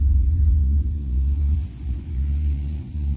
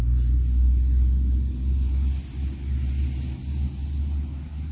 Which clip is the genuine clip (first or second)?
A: second